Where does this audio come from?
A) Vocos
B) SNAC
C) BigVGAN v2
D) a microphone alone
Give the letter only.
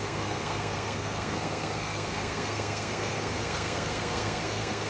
B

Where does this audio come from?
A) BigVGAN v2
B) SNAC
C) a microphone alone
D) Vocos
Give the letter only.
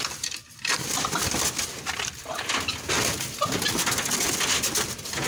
C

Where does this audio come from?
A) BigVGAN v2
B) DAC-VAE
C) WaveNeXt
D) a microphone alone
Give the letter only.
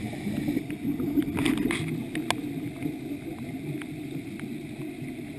D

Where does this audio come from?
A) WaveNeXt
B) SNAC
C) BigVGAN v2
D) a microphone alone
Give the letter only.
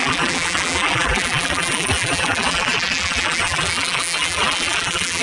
C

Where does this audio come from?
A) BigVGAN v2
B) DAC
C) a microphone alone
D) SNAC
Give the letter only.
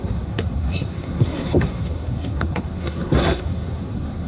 D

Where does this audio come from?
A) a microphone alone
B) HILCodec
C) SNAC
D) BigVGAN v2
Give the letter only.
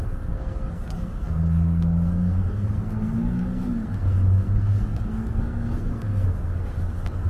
C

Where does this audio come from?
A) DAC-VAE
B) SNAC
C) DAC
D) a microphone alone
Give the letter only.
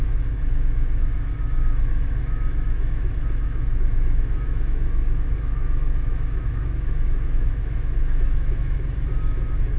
A